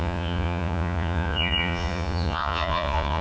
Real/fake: fake